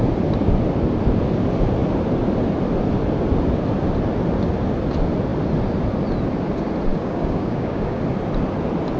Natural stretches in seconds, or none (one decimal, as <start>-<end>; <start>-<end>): 0.0-6.9; 8.0-9.0